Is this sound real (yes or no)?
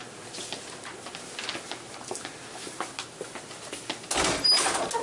yes